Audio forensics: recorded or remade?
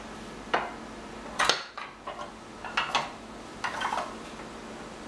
recorded